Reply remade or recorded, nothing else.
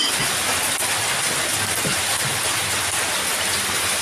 recorded